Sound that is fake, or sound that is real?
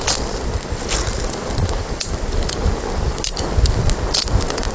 real